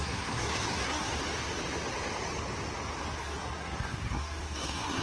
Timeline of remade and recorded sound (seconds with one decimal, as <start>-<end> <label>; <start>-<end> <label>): 0.0-1.1 remade; 1.1-3.2 recorded; 3.2-5.0 remade